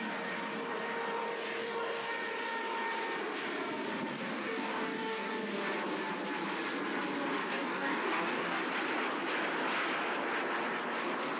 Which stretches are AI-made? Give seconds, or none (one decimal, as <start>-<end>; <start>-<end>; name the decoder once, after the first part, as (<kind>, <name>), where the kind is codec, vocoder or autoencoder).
1.6-2.1 (codec, DAC); 4.1-5.3; 7.4-8.6